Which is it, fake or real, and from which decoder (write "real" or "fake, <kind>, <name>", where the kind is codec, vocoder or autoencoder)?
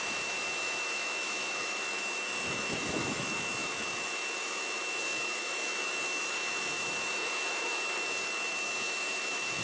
fake, autoencoder, DAC-VAE